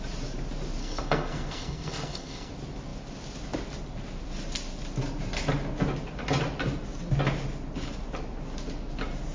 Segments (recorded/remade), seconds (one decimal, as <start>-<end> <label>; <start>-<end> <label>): 0.0-0.8 recorded; 0.8-2.5 remade; 2.5-9.3 recorded